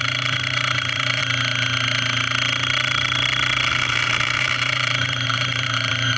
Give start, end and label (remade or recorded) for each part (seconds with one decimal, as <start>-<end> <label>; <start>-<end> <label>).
0.0-1.2 remade; 1.2-3.7 recorded; 3.7-6.2 remade